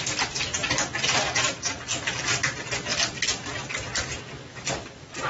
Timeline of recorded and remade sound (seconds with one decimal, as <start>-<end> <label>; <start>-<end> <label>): 0.0-5.3 recorded